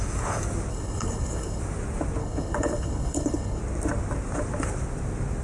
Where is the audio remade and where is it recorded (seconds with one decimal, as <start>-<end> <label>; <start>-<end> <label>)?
0.0-0.7 recorded; 0.7-1.6 remade; 1.6-2.2 recorded; 2.2-3.6 remade; 3.6-5.4 recorded